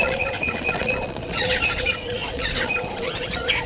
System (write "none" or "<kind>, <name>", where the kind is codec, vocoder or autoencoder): vocoder, Vocos